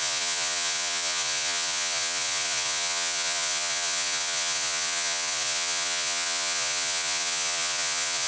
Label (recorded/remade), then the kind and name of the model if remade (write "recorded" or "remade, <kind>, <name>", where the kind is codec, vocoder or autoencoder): remade, vocoder, Vocos